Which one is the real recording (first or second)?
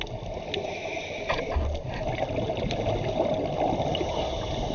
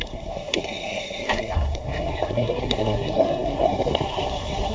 first